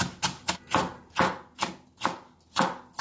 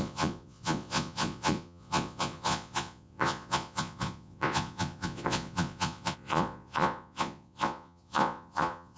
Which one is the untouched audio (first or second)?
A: first